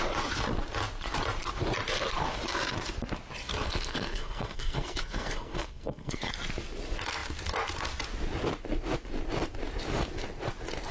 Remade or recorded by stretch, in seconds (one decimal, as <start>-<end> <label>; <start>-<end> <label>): 0.0-3.5 recorded; 3.5-6.3 remade; 6.3-10.9 recorded